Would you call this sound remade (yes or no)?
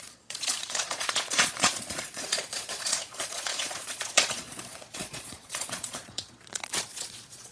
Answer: yes